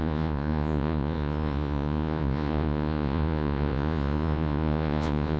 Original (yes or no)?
no